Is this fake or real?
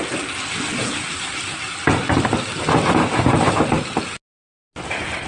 real